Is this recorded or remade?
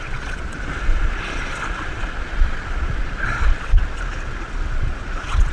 remade